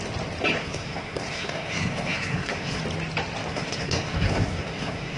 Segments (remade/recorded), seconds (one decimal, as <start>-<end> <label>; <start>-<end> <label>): 0.0-0.6 recorded; 0.6-2.8 remade; 2.8-3.5 recorded; 3.5-5.2 remade